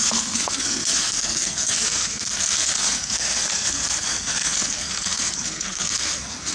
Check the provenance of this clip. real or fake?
fake